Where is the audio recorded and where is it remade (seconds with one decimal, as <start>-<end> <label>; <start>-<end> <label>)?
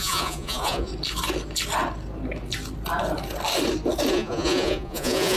0.0-0.9 remade; 0.9-4.1 recorded; 4.1-5.4 remade